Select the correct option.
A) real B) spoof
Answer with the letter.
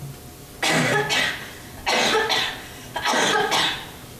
A